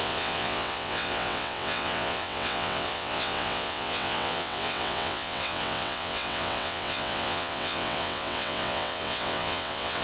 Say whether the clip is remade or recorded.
remade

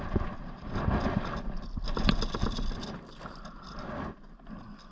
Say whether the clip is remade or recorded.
recorded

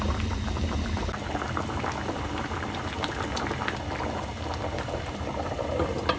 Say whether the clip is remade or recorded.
recorded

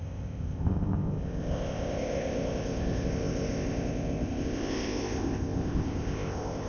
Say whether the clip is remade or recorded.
remade